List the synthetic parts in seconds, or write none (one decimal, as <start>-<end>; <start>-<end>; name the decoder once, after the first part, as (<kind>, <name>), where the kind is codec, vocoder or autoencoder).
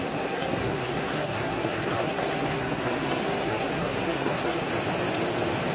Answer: 0.0-4.7 (codec, SNAC)